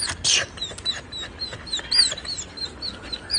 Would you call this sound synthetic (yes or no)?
no